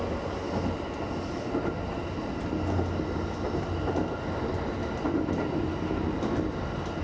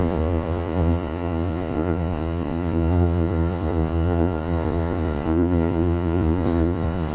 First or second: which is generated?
second